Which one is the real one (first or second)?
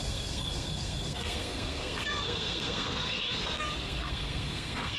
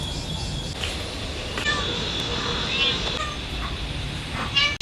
second